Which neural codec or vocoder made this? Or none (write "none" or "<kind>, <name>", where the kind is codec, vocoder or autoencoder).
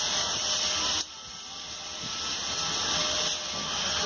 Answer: none